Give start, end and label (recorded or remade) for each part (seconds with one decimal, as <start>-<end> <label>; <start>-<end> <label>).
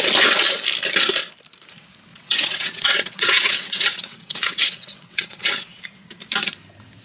0.0-2.1 recorded; 2.1-5.8 remade; 5.8-7.0 recorded